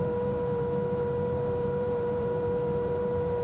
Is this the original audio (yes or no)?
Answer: no